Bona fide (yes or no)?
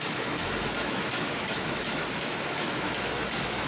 no